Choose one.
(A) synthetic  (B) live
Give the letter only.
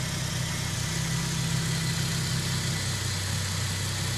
B